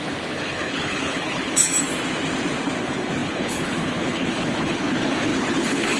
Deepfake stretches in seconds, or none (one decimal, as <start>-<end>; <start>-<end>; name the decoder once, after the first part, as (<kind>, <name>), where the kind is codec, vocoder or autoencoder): 0.0-1.7 (codec, HILCodec); 2.8-6.0